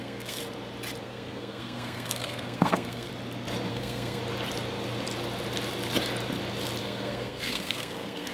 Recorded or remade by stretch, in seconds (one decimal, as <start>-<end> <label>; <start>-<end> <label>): 0.0-0.4 remade; 0.4-1.0 recorded; 1.0-3.1 remade; 3.1-3.7 recorded; 3.7-4.2 remade; 4.2-6.8 recorded; 6.8-8.3 remade